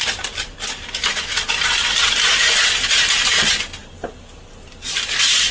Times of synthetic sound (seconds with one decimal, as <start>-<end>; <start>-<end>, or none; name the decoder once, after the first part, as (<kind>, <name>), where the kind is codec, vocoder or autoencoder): 0.0-3.3 (vocoder, BigVGAN v2); 3.8-5.1